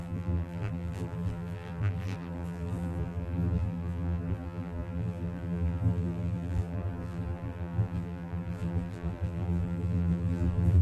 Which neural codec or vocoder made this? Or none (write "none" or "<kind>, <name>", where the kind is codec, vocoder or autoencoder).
vocoder, BigVGAN v2